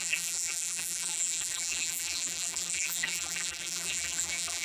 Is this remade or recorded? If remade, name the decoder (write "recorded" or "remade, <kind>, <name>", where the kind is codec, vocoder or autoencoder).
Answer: remade, vocoder, BigVGAN v2